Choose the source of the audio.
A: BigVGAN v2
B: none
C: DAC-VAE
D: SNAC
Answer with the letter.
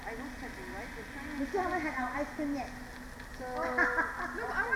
B